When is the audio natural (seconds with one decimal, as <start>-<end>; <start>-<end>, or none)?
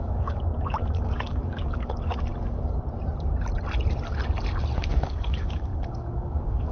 2.3-4.9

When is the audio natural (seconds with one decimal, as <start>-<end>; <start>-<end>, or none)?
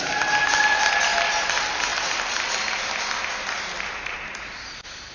0.0-5.1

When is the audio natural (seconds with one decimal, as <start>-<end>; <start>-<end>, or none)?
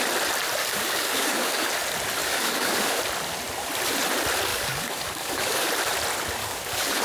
0.0-0.6; 1.7-2.2; 3.0-4.5; 5.7-6.4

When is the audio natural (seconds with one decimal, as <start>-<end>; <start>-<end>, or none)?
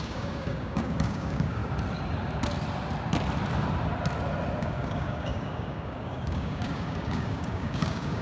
1.6-4.6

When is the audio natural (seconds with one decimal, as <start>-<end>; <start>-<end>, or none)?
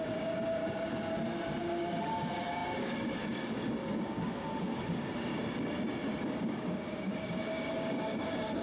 0.6-1.6; 5.3-6.3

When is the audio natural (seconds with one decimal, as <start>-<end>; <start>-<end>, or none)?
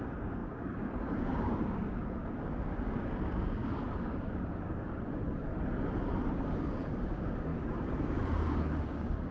5.5-6.3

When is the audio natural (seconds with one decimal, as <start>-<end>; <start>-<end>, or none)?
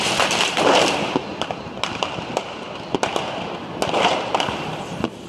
0.0-5.3